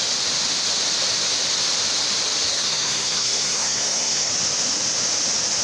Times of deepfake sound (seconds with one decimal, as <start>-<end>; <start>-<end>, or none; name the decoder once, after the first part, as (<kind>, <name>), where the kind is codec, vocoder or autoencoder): 2.5-4.3 (codec, SNAC)